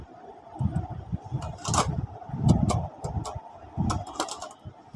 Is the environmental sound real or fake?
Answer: real